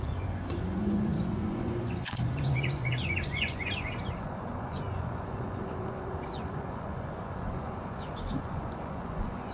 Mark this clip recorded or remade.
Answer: remade